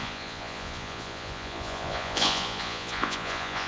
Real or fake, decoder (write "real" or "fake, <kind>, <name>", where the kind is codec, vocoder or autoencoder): fake, vocoder, Vocos